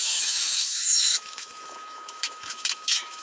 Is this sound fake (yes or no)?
yes